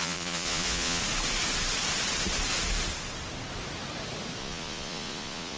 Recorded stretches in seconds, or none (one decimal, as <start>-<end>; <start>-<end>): 1.0-4.4